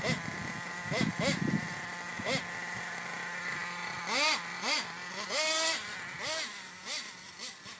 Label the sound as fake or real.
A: real